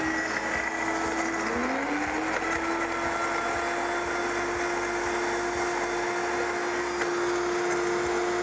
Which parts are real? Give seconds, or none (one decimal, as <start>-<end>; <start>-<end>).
0.0-8.4